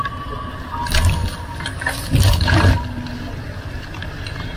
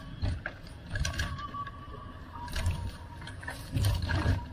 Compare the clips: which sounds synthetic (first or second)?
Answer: second